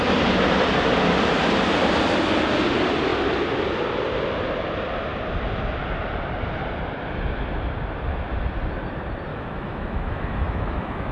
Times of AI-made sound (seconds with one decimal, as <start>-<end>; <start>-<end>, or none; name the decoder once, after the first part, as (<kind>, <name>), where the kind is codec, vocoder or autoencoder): 9.3-11.1 (autoencoder, DAC-VAE)

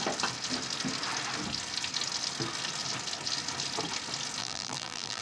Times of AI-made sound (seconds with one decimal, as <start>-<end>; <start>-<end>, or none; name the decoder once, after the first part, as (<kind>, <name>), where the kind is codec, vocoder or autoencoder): 4.4-5.2 (vocoder, BigVGAN v2)

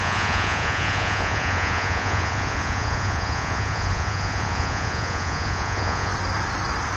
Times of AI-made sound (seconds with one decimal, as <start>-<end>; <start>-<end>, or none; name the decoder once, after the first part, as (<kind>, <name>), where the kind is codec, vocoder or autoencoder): 0.0-6.1 (vocoder, Vocos)

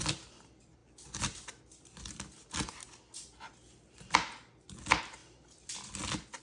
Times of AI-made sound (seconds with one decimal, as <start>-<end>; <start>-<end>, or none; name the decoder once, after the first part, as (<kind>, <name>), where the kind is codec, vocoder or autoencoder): 0.0-0.8 (vocoder, BigVGAN v2); 4.6-5.2

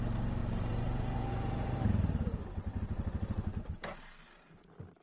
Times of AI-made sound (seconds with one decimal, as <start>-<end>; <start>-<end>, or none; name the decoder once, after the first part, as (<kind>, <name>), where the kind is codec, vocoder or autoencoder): 0.4-2.8 (vocoder, BigVGAN v2)

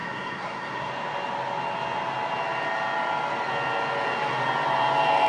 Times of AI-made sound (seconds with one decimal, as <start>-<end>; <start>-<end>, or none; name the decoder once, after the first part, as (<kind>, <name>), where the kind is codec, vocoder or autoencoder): 0.0-0.9 (codec, SNAC)